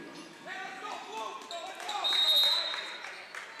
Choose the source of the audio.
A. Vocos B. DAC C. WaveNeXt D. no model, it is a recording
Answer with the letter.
D